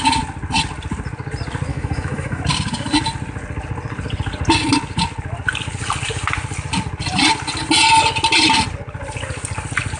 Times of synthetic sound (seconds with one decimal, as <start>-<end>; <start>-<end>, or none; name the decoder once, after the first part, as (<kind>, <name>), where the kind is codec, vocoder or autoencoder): 1.7-2.4 (autoencoder, DAC-VAE)